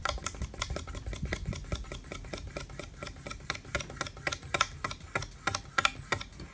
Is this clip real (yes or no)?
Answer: yes